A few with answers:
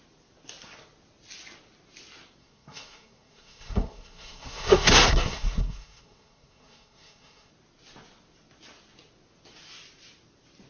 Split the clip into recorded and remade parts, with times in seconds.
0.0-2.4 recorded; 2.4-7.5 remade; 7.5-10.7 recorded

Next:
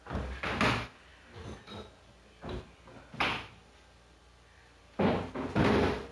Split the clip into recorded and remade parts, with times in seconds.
0.0-6.1 recorded

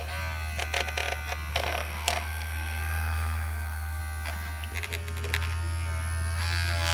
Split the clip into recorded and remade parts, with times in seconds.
0.0-1.5 recorded; 1.5-4.0 remade; 4.0-6.9 recorded

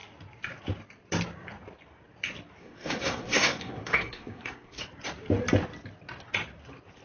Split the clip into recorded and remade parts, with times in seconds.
0.0-2.6 recorded; 2.6-4.8 remade; 4.8-7.0 recorded

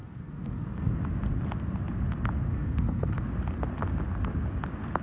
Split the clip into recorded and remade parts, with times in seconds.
0.0-0.9 remade; 0.9-2.5 recorded; 2.5-3.2 remade; 3.2-5.0 recorded